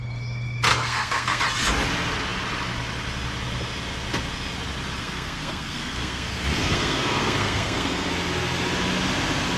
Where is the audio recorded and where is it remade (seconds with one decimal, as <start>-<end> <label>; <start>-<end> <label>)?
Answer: 0.0-0.7 recorded; 0.7-1.4 remade; 1.4-5.0 recorded; 5.0-8.1 remade; 8.1-9.6 recorded